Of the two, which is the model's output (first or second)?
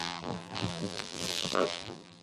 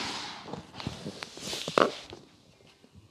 first